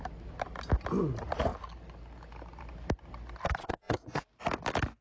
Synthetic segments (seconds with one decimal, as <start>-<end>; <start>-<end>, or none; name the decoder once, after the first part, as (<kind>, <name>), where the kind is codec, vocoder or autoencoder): 3.6-4.2 (codec, SNAC)

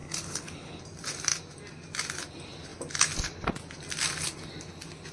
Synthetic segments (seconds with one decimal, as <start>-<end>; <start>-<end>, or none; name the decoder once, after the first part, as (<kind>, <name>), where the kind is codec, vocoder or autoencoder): 0.0-0.8 (codec, HILCodec)

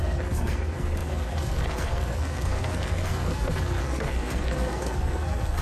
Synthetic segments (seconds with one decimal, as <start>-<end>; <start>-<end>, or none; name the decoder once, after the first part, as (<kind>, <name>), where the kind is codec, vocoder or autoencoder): 0.0-5.6 (codec, SNAC)